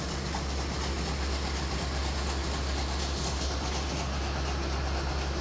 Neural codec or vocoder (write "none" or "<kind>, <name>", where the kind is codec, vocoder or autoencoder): none